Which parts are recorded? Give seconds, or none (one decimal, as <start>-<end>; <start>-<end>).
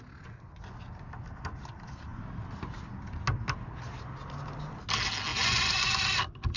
0.0-5.3; 6.0-6.6